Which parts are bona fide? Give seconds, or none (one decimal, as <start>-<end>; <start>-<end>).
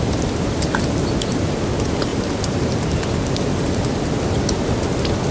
0.0-2.1; 3.9-5.3